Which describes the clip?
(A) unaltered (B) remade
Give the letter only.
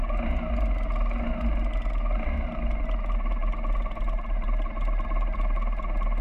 A